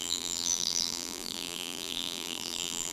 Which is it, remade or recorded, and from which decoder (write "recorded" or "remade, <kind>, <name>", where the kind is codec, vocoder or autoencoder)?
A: remade, vocoder, BigVGAN v2